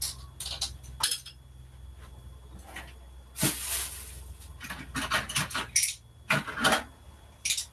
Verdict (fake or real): real